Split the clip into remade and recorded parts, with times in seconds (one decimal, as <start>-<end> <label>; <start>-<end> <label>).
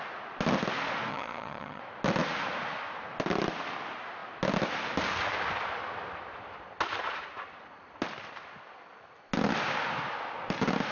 0.0-1.1 recorded; 1.1-1.8 remade; 1.8-10.9 recorded